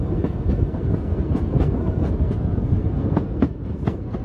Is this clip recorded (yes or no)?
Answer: no